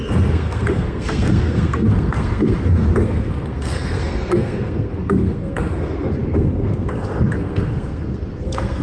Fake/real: fake